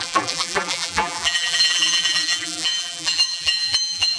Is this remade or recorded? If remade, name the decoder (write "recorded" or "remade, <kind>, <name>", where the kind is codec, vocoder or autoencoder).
remade, vocoder, BigVGAN v2